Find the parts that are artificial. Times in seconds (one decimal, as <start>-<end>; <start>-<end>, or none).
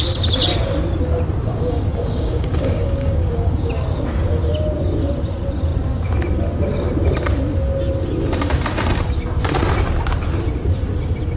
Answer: 1.5-3.7